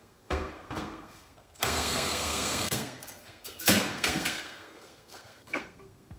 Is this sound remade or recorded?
remade